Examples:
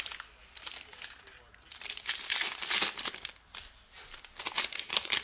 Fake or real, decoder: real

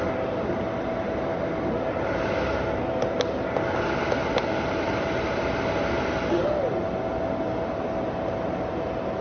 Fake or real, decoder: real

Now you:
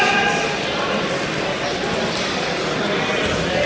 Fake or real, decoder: real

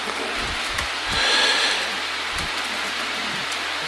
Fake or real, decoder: real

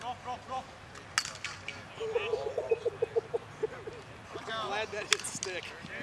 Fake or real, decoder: real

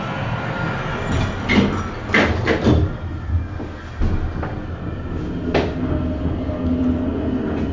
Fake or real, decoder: real